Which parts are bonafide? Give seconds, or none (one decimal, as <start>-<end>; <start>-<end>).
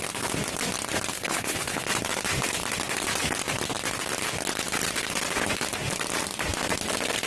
0.0-1.1; 1.9-7.3